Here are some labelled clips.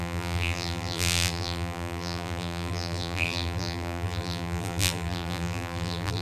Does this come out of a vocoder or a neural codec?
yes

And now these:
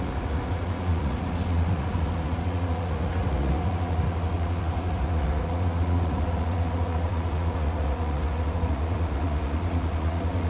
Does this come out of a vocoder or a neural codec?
yes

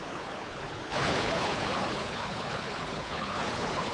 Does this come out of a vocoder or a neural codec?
yes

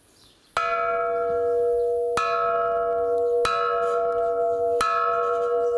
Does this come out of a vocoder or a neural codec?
no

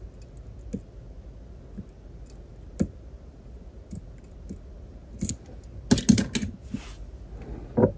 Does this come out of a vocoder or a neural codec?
no